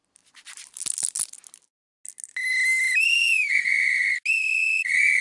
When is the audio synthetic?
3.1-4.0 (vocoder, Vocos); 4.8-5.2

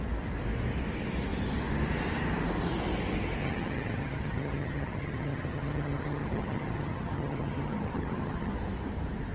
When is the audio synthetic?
3.4-8.5 (vocoder, HiFi-GAN)

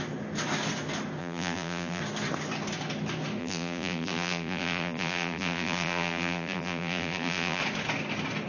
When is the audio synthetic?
1.2-2.0 (vocoder, BigVGAN v2); 3.4-7.6

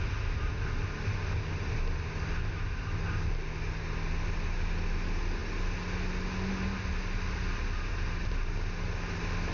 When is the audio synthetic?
none

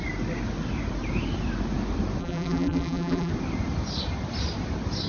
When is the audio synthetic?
2.2-3.3 (vocoder, BigVGAN v2)

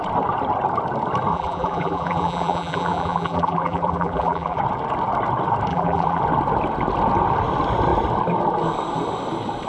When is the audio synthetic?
1.3-4.6 (vocoder, BigVGAN v2); 5.7-6.2

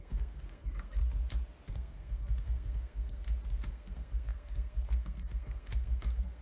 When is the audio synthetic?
0.0-1.0 (codec, SNAC); 1.7-3.2; 3.7-6.4